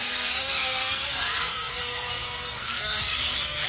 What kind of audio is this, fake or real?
fake